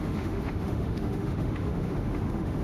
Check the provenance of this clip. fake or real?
fake